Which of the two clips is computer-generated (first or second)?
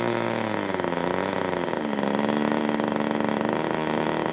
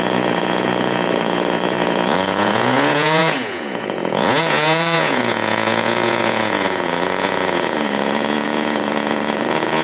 second